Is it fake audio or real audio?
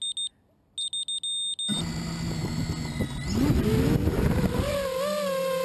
real